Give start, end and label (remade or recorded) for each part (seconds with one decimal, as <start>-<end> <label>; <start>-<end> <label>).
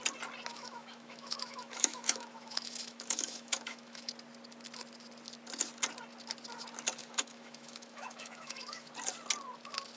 0.0-0.5 recorded; 0.5-4.1 remade; 4.1-7.0 recorded; 7.0-8.9 remade; 8.9-10.0 recorded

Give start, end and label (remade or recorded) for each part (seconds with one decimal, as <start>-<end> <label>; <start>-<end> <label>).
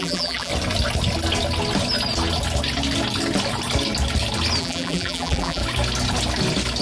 0.0-0.5 remade; 0.5-4.6 recorded; 4.6-5.6 remade; 5.6-6.8 recorded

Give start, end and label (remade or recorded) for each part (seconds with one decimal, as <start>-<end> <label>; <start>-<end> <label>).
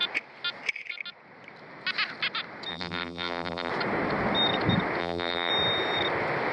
0.0-2.7 recorded; 2.7-3.7 remade; 3.7-5.0 recorded; 5.0-5.5 remade; 5.5-6.5 recorded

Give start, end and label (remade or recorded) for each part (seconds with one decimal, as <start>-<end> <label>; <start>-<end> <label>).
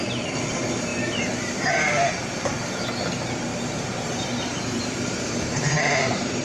0.0-3.5 recorded; 3.5-6.4 remade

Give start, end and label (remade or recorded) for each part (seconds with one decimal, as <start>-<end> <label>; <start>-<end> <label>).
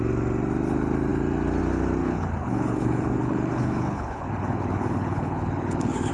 0.0-2.0 recorded; 2.0-6.1 remade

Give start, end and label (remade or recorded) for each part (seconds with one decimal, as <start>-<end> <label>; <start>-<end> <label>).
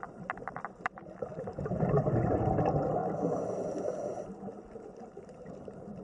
0.0-1.3 remade; 1.3-2.0 recorded; 2.0-6.0 remade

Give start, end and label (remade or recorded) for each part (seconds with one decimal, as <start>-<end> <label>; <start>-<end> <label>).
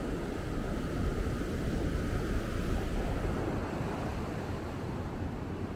0.0-4.1 recorded; 4.1-4.6 remade; 4.6-5.8 recorded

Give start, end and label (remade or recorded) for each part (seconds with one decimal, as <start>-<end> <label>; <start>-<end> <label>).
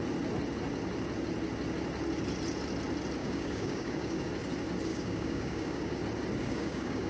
0.0-3.2 recorded; 3.2-4.3 remade; 4.3-4.9 recorded; 4.9-6.0 remade; 6.0-6.4 recorded; 6.4-7.1 remade